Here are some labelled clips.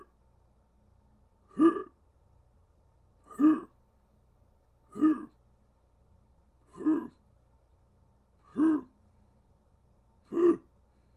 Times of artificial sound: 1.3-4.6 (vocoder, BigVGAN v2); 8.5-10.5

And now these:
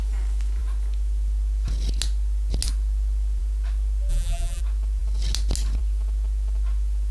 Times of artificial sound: 4.1-4.6 (vocoder, BigVGAN v2)

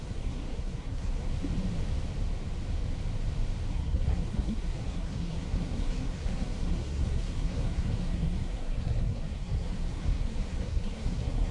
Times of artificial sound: 0.0-1.3 (codec, SNAC); 3.7-11.5

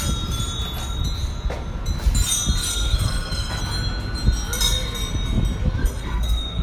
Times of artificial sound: 2.7-3.6 (codec, SNAC); 5.8-6.6